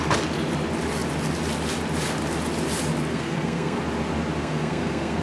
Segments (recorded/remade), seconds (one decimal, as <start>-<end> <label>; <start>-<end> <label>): 0.0-3.1 recorded; 3.1-3.8 remade; 3.8-4.4 recorded; 4.4-5.2 remade